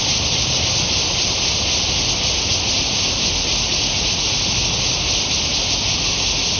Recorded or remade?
recorded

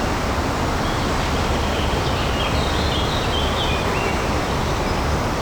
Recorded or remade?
recorded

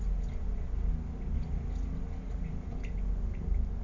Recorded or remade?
recorded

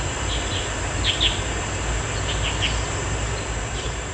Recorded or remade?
recorded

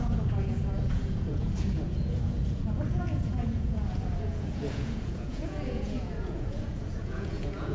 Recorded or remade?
remade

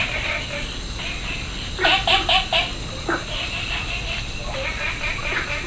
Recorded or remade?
recorded